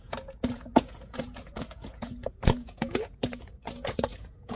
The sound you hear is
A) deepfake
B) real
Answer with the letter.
A